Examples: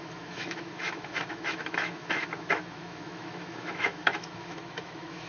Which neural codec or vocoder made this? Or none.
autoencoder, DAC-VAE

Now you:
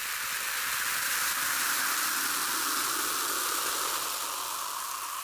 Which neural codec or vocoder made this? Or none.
none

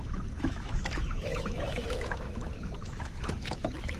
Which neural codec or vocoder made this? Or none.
autoencoder, DAC-VAE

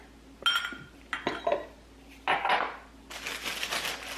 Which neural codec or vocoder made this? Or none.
none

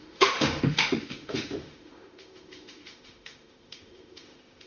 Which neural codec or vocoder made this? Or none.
autoencoder, DAC-VAE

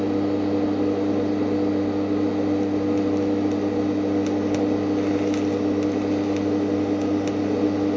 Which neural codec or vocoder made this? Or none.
none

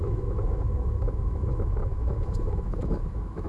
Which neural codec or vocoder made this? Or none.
autoencoder, DAC-VAE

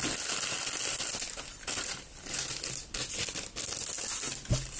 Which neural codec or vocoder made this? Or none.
none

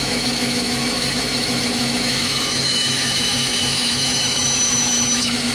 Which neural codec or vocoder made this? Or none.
autoencoder, DAC-VAE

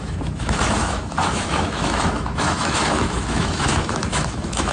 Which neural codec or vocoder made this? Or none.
autoencoder, DAC-VAE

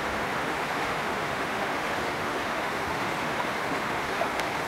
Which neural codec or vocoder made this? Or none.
autoencoder, DAC-VAE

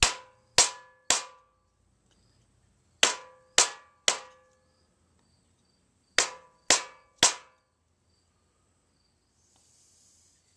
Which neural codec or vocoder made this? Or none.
none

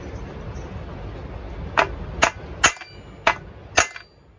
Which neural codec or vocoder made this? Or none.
none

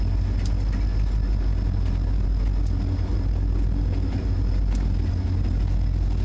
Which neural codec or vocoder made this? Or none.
none